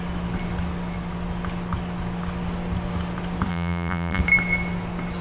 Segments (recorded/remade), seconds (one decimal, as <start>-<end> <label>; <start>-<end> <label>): 0.0-3.5 recorded; 3.5-4.2 remade; 4.2-5.2 recorded